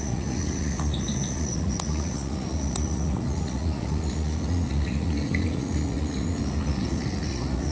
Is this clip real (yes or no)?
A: no